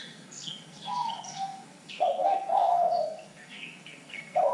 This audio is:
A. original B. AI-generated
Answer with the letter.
B